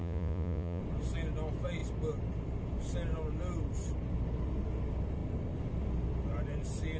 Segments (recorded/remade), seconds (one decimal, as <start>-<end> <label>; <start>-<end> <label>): 0.0-0.8 remade; 0.8-7.0 recorded